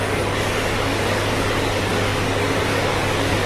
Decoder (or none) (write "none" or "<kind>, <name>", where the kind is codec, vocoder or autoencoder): codec, DAC